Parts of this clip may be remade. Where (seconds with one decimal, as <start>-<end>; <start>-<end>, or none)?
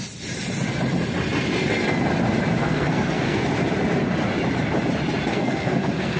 2.6-3.4; 5.3-6.2